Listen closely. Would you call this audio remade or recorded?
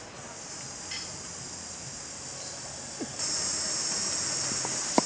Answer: recorded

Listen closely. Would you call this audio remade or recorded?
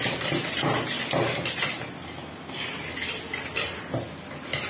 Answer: recorded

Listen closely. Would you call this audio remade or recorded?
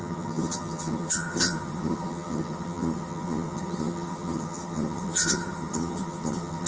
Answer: remade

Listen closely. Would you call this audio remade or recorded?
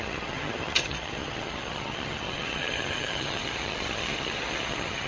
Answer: remade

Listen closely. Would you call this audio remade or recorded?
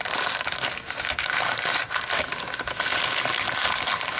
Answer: recorded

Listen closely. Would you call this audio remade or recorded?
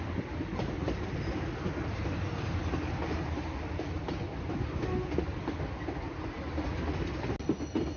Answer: recorded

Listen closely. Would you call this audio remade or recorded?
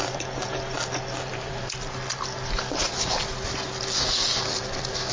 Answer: recorded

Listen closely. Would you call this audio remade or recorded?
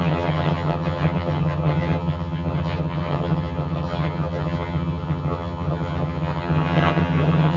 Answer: remade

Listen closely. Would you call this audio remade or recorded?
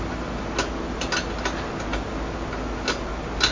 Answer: recorded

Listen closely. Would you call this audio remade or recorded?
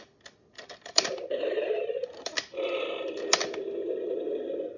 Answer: recorded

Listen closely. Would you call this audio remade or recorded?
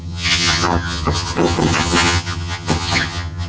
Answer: remade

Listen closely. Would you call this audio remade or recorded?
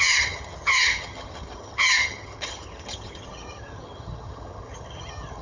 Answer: remade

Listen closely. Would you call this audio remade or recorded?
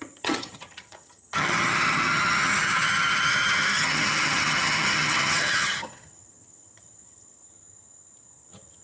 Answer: remade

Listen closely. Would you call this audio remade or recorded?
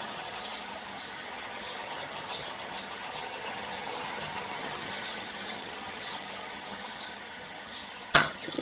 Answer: remade